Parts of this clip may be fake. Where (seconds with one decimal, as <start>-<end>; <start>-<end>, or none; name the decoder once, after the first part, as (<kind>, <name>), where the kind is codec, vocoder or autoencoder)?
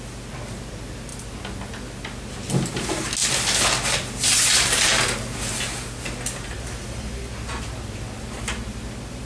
none